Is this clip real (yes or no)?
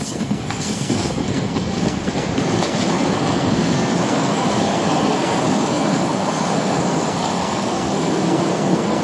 no